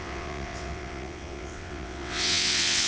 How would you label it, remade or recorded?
remade